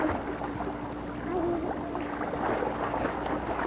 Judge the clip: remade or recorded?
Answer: recorded